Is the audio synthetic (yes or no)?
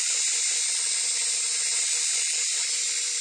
no